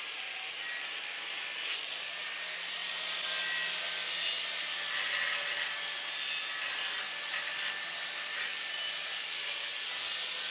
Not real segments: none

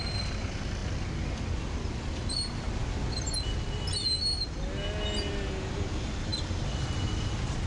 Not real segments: none

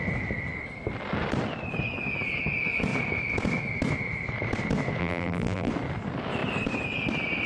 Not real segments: 5.0-5.7 (vocoder, BigVGAN v2)

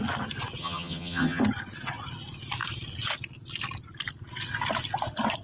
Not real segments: 0.6-1.4 (vocoder, HiFi-GAN)

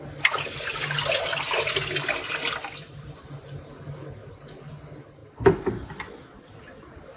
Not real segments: none

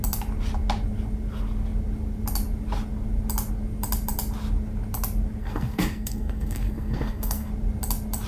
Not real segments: 5.4-7.5 (codec, SNAC)